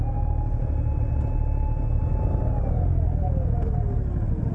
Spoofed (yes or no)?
no